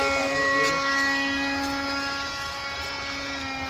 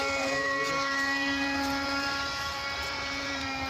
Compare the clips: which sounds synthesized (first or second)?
second